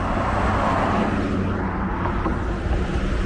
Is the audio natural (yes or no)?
yes